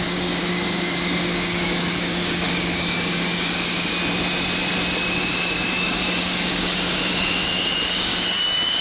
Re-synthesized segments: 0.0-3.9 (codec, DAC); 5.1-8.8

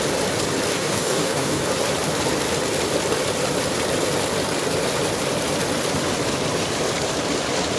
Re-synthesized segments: 0.7-1.6 (codec, DAC)

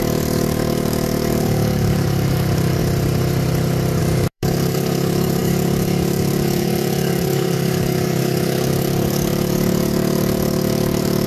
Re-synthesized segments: 0.0-2.8 (codec, DAC); 4.0-11.3

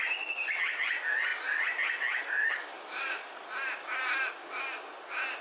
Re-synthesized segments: none

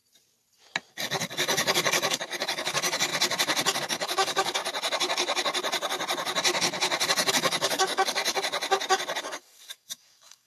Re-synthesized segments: 0.9-3.1 (codec, DAC); 3.8-4.6; 7.3-8.2; 9.2-10.5